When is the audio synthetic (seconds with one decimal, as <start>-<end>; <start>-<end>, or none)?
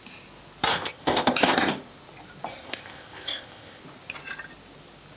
0.7-1.7; 2.5-3.8